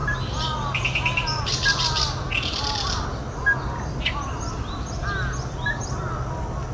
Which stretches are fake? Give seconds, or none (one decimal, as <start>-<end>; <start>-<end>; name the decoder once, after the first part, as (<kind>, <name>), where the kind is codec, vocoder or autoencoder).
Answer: none